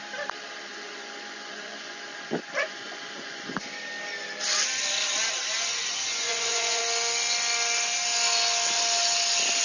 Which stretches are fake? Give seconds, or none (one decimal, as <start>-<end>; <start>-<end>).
0.7-3.6; 6.1-6.8